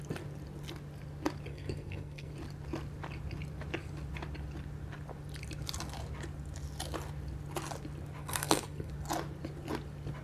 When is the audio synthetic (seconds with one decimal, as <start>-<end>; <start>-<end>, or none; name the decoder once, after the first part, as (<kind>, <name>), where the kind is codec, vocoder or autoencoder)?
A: 1.5-2.3 (codec, SNAC); 8.2-8.9